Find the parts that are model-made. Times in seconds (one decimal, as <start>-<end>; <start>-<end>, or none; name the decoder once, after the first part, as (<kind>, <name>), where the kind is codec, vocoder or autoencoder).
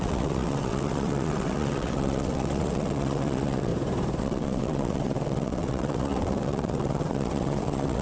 0.0-3.7 (vocoder, WaveNeXt); 4.2-8.0